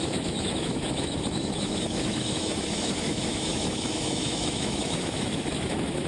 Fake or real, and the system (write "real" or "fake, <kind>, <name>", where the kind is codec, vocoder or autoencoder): fake, autoencoder, DAC-VAE